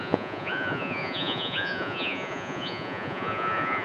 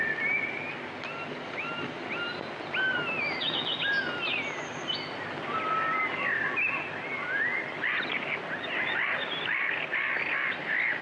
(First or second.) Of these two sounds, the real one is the second